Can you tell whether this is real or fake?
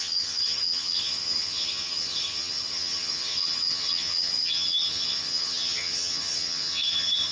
fake